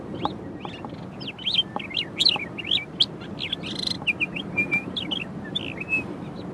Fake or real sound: real